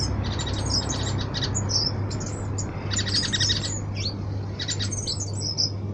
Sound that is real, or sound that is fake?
real